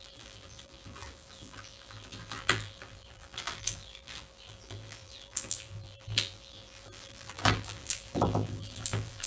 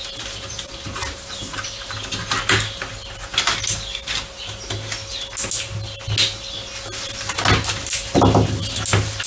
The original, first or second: second